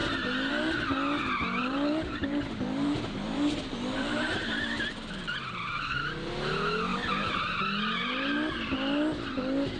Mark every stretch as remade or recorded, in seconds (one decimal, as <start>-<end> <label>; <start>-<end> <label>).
0.0-1.6 recorded; 1.6-5.9 remade; 5.9-6.9 recorded; 6.9-7.6 remade; 7.6-9.8 recorded